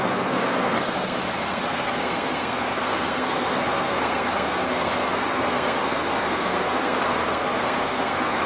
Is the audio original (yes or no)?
no